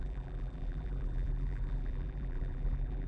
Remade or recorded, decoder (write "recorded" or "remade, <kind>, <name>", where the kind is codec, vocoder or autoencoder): remade, vocoder, BigVGAN v2